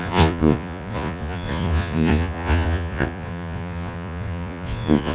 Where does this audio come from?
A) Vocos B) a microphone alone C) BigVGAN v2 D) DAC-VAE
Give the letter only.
A